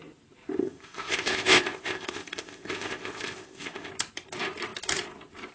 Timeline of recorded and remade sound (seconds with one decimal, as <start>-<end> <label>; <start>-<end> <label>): 0.0-0.6 recorded; 0.6-3.9 remade; 3.9-5.5 recorded